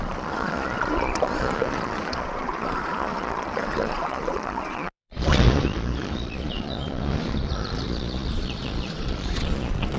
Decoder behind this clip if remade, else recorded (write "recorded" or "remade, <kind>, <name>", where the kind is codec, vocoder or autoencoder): remade, vocoder, Vocos